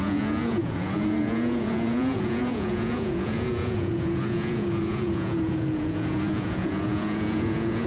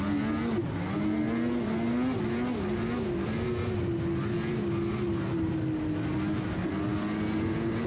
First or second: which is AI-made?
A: first